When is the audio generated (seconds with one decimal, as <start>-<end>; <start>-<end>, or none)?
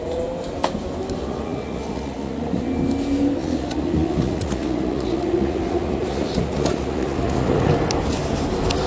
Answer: 1.2-2.7; 3.4-7.7